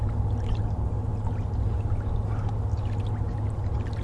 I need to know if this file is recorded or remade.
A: recorded